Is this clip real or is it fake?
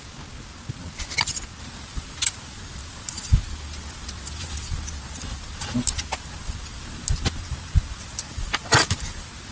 real